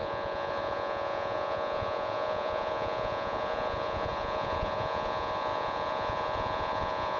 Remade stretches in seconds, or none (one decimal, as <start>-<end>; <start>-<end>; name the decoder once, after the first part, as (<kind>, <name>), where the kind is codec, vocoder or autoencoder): 0.0-7.2 (vocoder, Vocos)